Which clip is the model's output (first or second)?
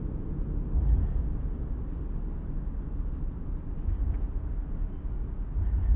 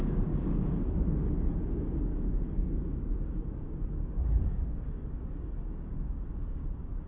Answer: second